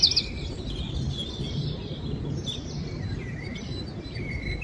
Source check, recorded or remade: recorded